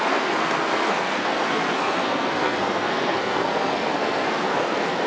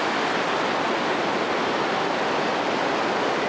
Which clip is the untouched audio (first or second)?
second